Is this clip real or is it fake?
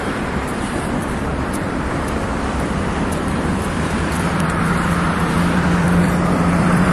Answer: fake